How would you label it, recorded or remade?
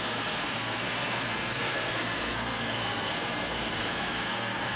remade